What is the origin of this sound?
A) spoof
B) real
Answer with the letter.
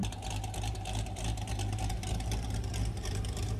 A